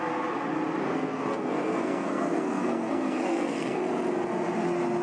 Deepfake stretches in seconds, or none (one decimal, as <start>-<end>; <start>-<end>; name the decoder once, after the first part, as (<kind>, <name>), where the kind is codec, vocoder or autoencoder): 0.8-3.8 (codec, SNAC)